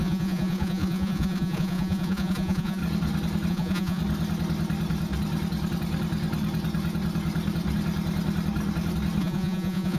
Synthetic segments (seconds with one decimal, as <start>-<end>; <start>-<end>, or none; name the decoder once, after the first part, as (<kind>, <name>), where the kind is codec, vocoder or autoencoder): 0.0-2.8 (vocoder, Vocos); 3.5-4.0; 9.2-10.0